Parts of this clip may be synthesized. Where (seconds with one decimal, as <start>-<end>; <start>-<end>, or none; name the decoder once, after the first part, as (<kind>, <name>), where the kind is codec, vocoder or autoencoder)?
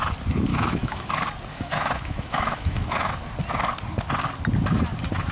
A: 0.5-1.1 (autoencoder, DAC-VAE); 1.5-3.1